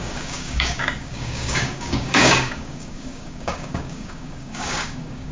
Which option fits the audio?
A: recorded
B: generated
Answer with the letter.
B